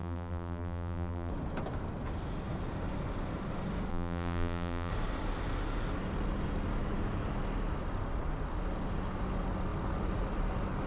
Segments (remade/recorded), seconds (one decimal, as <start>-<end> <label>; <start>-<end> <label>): 0.0-1.3 remade; 1.3-3.9 recorded; 3.9-4.9 remade; 4.9-10.9 recorded